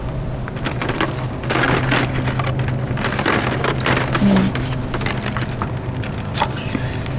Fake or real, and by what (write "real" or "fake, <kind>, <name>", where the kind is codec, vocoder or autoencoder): real